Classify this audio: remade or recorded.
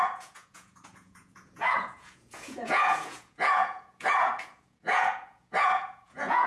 remade